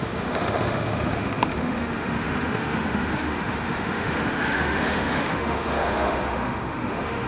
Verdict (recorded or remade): remade